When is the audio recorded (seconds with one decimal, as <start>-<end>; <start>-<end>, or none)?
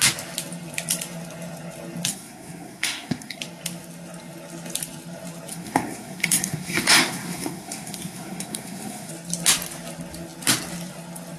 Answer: 0.0-2.1; 3.4-5.5; 9.1-11.4